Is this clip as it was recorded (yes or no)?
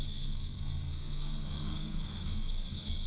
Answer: no